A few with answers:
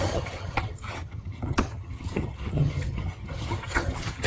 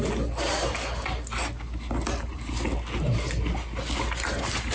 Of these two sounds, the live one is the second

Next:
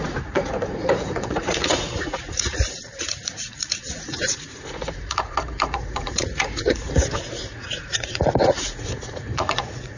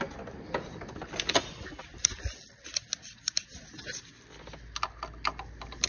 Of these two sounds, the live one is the second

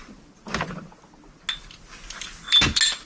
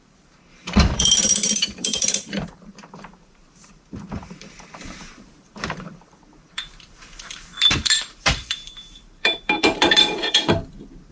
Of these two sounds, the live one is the first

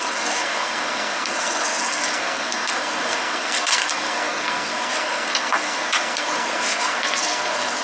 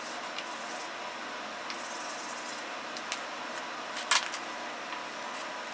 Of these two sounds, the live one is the second